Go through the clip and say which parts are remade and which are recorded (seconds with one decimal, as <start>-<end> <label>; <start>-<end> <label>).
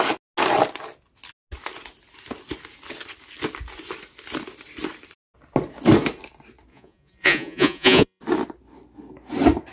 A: 0.0-6.7 recorded; 6.7-8.2 remade; 8.2-9.7 recorded